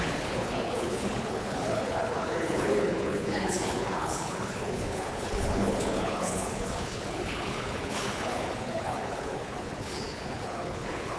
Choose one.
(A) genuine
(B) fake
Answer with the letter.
B